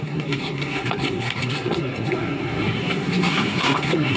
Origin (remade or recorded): remade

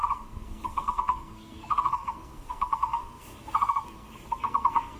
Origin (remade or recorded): remade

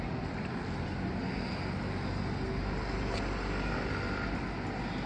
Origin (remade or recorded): recorded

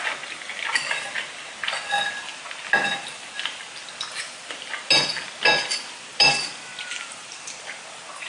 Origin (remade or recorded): recorded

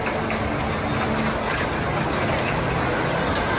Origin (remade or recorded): recorded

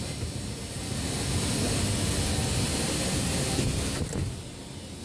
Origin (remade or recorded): recorded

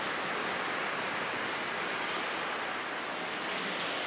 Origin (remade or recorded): recorded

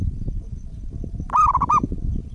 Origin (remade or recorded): recorded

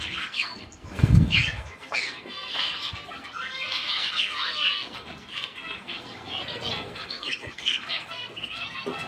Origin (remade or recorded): remade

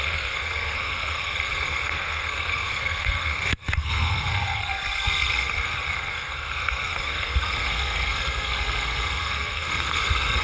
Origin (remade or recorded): remade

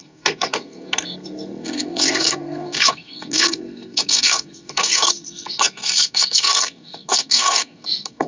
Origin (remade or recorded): remade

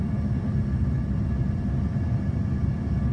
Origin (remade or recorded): recorded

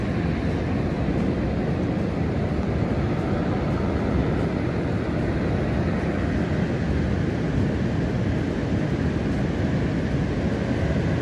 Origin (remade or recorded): recorded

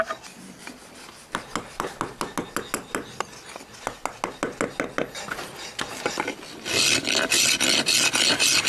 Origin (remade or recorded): recorded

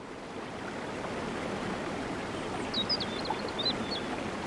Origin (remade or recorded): recorded